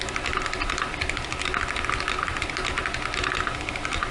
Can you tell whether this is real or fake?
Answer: real